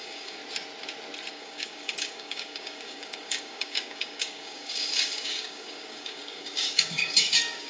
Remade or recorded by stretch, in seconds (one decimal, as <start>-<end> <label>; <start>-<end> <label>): 0.0-0.4 remade; 0.4-1.3 recorded; 1.3-7.7 remade